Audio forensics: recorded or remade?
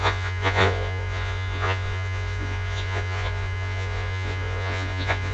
remade